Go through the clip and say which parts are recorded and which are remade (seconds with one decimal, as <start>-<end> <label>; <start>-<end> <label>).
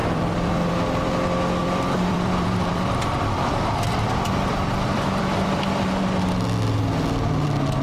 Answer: 0.0-0.7 remade; 0.7-1.6 recorded; 1.6-5.6 remade; 5.6-7.8 recorded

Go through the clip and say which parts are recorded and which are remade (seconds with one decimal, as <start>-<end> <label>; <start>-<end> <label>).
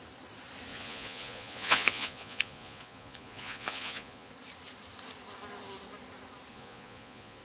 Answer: 0.0-0.7 recorded; 0.7-4.3 remade; 4.3-6.5 recorded; 6.5-7.4 remade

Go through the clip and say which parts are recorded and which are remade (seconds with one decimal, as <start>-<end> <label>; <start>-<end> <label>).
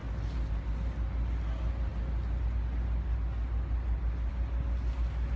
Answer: 0.0-5.4 recorded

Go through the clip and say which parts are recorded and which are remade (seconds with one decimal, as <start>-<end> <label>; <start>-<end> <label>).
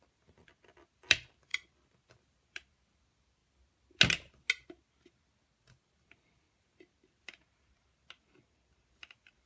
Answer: 0.0-3.4 remade; 3.4-5.6 recorded; 5.6-9.5 remade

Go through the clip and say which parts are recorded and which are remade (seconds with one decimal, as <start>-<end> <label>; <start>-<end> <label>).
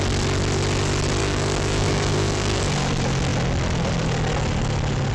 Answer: 0.0-1.2 recorded; 1.2-2.6 remade; 2.6-5.1 recorded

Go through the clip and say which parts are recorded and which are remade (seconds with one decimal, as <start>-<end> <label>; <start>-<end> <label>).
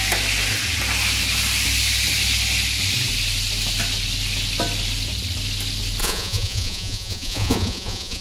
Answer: 0.0-6.0 recorded; 6.0-8.2 remade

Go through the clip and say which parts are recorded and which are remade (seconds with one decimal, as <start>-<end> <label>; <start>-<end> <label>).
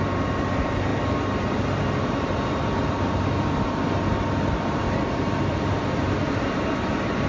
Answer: 0.0-7.3 recorded